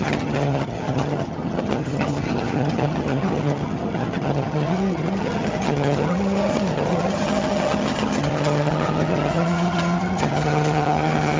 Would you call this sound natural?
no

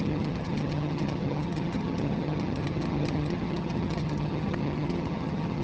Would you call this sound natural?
no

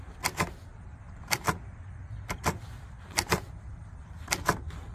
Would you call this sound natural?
no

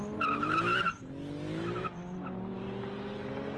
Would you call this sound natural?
yes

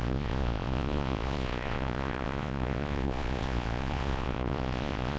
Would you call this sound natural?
no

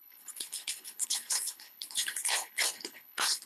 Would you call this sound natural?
no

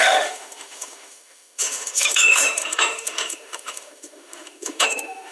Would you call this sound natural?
no